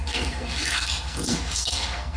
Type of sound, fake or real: fake